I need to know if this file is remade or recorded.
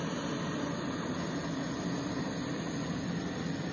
recorded